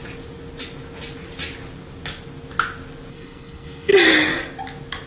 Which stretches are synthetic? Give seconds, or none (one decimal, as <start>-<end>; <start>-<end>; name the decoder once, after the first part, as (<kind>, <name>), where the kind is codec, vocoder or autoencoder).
3.1-3.9 (codec, SNAC)